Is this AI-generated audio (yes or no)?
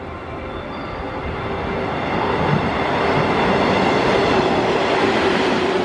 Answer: no